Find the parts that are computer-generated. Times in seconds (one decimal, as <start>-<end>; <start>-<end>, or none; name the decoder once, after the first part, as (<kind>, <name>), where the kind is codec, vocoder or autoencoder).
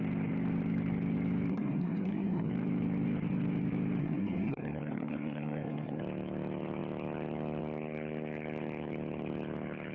1.5-2.5 (codec, SNAC); 4.0-6.0